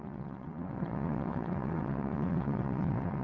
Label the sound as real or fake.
fake